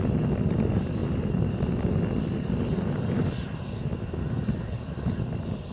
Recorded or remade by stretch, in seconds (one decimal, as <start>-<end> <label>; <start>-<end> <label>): 0.0-5.7 recorded